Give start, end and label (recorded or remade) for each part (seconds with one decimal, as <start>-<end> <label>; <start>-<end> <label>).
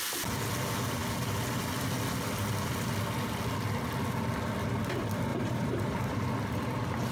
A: 0.0-5.3 recorded; 5.3-6.3 remade; 6.3-7.1 recorded